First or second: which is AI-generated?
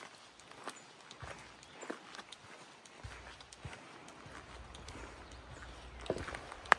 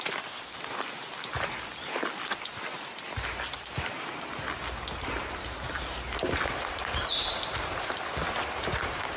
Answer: second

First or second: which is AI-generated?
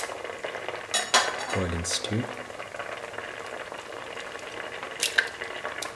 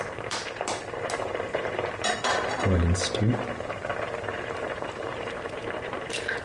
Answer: second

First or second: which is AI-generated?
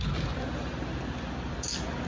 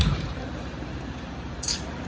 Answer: second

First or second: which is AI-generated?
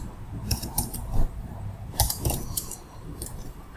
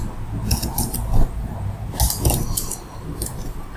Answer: first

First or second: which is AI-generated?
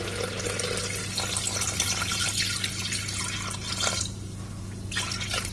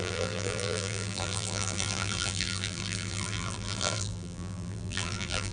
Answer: second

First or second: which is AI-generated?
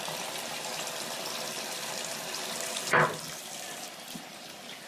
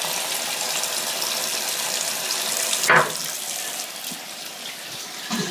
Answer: first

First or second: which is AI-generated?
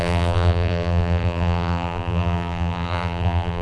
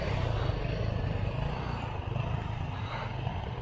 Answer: first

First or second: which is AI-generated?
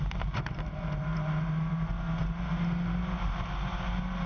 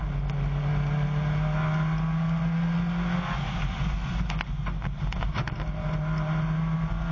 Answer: first